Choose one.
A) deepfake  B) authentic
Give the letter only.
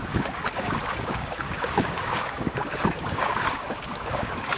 A